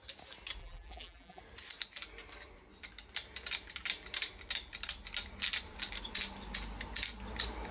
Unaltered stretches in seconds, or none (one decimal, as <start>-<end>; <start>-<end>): 0.0-0.6; 1.4-7.7